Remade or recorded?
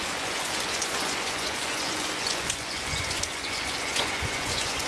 remade